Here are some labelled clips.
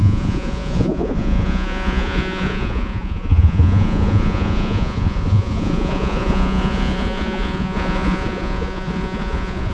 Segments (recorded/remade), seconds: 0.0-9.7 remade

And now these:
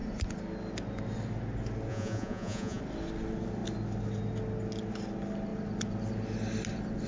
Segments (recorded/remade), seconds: 0.0-1.9 recorded; 1.9-2.8 remade; 2.8-7.1 recorded

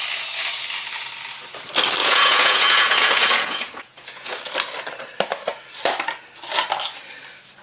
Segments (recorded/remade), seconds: 0.0-2.0 recorded; 2.0-4.4 remade; 4.4-7.6 recorded